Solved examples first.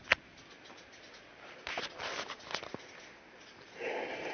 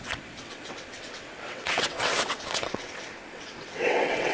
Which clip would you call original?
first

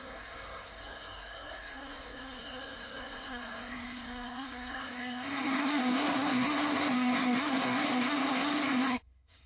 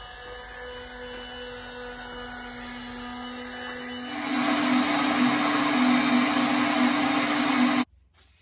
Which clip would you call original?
second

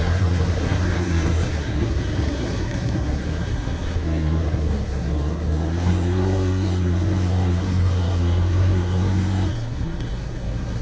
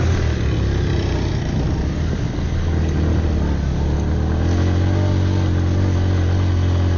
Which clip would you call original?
second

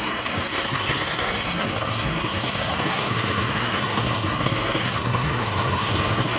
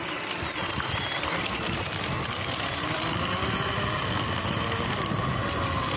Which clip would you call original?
second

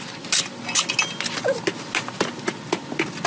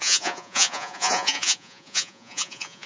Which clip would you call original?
first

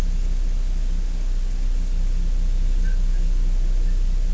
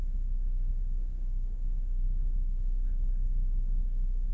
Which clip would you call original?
first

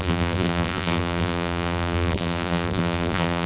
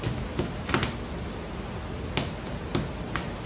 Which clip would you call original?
second